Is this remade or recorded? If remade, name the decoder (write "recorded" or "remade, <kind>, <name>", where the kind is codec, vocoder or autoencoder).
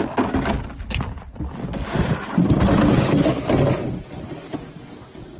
recorded